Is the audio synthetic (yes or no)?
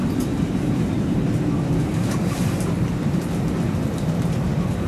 yes